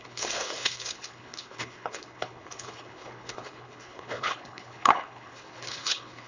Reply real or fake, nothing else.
fake